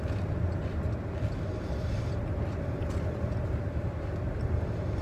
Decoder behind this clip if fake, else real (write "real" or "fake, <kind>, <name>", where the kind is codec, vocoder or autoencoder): real